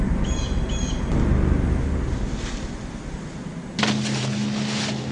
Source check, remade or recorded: recorded